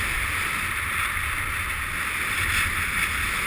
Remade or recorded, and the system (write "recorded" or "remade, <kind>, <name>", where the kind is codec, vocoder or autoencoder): recorded